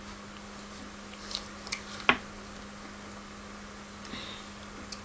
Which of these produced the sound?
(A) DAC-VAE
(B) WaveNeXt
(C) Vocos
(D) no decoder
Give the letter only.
D